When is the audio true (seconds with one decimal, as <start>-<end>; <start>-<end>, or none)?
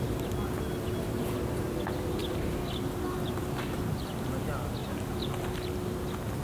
0.0-4.8; 5.3-6.4